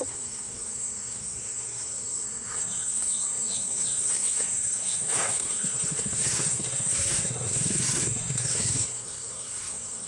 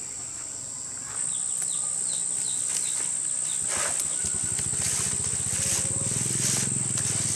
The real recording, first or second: second